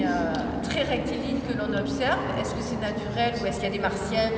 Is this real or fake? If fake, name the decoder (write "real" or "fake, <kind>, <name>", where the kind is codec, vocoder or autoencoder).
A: real